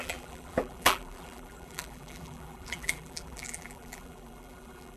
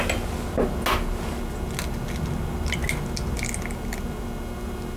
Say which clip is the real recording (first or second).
second